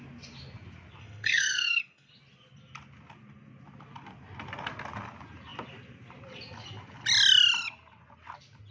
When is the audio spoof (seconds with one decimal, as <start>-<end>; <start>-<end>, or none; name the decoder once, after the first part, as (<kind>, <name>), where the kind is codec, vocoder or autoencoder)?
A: 1.0-2.1 (codec, SNAC)